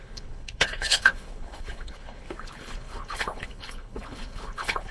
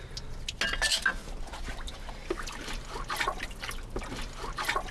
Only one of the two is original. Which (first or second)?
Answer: second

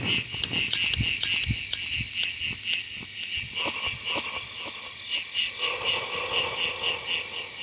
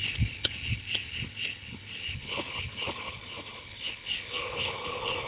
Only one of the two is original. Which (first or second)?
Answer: first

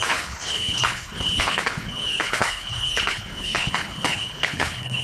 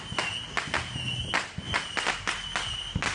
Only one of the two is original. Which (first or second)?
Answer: second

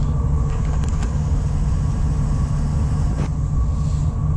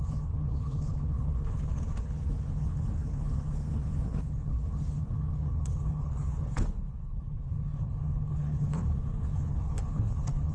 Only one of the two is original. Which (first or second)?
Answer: first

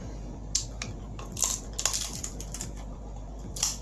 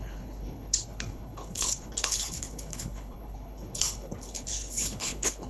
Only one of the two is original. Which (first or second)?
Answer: first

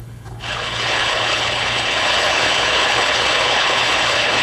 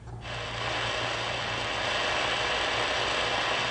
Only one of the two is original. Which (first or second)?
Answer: second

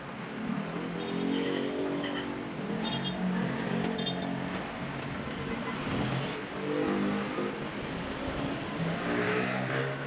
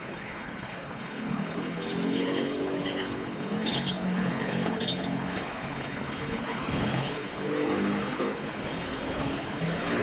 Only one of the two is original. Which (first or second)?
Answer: first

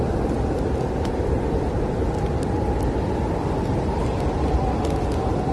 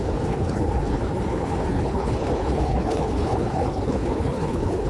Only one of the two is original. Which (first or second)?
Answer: first